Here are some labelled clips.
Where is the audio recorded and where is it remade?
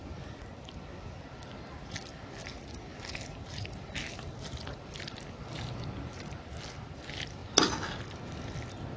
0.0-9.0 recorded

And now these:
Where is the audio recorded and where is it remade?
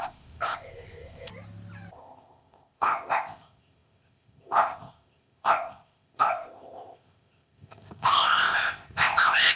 0.0-1.3 remade; 1.3-1.9 recorded; 1.9-9.6 remade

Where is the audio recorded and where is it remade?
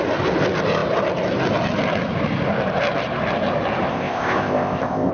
0.0-3.9 recorded; 3.9-5.1 remade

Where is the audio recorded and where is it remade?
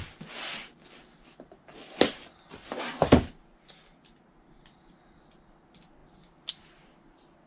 0.0-7.5 recorded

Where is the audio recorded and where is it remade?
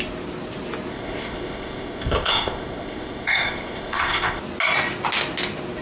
0.0-0.9 recorded; 0.9-4.4 remade; 4.4-5.8 recorded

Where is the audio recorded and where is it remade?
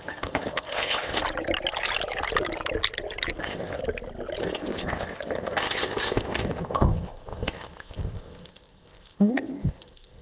0.0-1.2 remade; 1.2-3.4 recorded; 3.4-3.8 remade; 3.8-4.4 recorded; 4.4-10.2 remade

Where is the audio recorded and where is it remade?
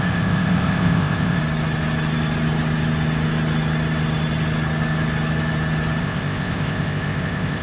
0.0-1.4 remade; 1.4-6.0 recorded; 6.0-7.6 remade